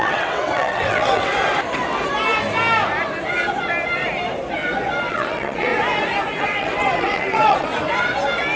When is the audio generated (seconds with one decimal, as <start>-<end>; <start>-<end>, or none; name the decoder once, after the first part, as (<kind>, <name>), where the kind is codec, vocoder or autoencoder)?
0.0-1.3 (vocoder, WaveNeXt); 5.1-5.7; 6.4-7.8